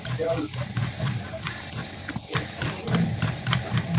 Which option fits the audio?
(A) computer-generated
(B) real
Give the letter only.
A